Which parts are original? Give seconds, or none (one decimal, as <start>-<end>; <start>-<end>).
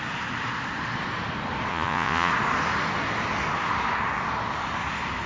0.0-1.7; 2.3-5.3